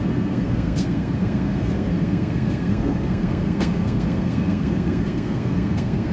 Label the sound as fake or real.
fake